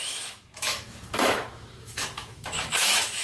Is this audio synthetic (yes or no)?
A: yes